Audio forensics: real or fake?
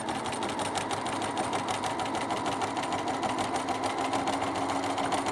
real